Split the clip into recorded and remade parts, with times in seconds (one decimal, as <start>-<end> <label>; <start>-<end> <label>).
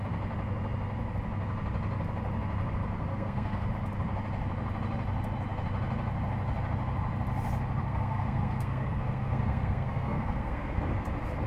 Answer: 0.0-3.1 recorded; 3.1-3.7 remade; 3.7-7.8 recorded; 7.8-10.8 remade; 10.8-11.5 recorded